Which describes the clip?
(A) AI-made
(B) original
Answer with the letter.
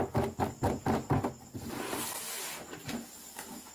B